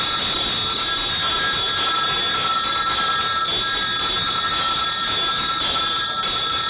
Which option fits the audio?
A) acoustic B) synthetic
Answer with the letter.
A